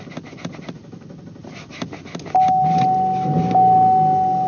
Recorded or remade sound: recorded